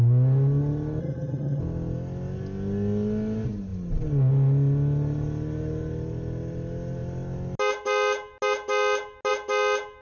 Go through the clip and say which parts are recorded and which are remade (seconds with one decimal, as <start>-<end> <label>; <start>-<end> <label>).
0.0-1.0 recorded; 1.0-1.6 remade; 1.6-10.0 recorded